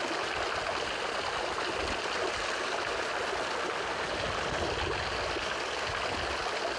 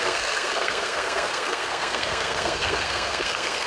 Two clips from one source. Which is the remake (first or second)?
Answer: second